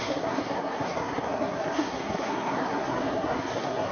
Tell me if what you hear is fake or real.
fake